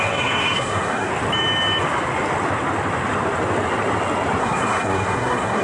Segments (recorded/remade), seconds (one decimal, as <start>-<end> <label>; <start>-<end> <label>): 0.0-1.1 remade; 1.1-4.4 recorded; 4.4-5.6 remade